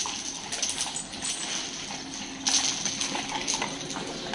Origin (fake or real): real